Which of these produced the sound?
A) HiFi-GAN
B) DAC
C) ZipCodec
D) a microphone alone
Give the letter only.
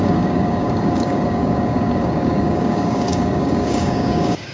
B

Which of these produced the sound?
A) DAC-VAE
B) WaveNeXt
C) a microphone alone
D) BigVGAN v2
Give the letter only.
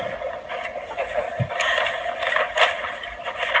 C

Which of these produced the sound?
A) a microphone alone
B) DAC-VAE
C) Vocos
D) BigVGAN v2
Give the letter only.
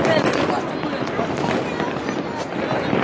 A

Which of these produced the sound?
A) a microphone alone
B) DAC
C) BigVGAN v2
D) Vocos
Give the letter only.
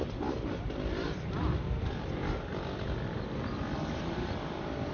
C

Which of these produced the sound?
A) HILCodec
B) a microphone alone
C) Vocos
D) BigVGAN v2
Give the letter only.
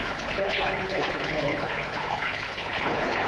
A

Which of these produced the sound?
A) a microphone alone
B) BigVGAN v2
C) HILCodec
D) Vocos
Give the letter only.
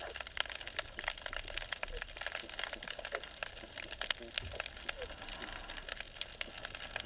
A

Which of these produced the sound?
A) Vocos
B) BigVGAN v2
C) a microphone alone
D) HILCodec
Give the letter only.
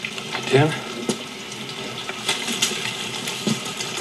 B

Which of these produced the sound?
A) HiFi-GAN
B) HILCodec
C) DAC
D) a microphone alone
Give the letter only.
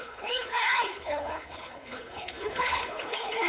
B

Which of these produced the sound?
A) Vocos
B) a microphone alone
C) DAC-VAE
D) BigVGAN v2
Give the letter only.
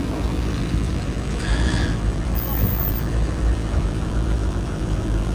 D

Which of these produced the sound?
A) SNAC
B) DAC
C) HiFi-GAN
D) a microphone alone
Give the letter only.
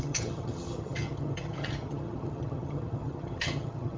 C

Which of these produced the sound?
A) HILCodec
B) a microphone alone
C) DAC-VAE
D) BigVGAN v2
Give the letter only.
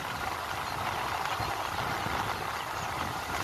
B